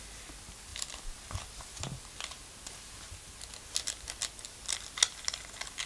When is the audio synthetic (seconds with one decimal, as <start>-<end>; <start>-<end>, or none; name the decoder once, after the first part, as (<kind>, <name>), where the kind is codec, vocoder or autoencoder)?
none